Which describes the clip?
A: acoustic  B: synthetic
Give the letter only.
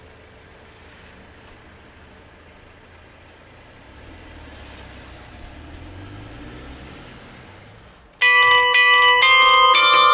A